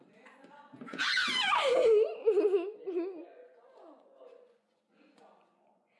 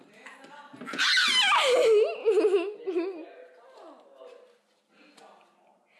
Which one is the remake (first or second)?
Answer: first